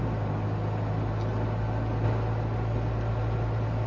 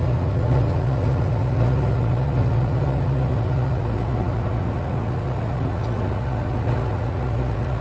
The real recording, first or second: first